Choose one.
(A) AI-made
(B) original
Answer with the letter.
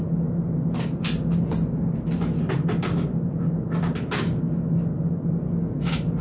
B